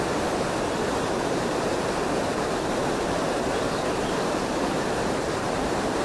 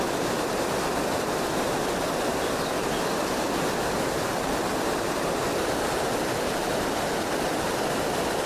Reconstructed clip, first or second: first